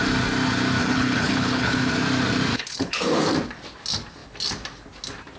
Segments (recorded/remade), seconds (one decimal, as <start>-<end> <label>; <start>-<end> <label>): 0.0-0.8 recorded; 0.8-1.9 remade; 1.9-2.5 recorded; 2.5-3.2 remade; 3.2-5.4 recorded